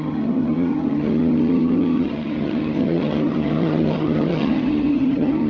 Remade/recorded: remade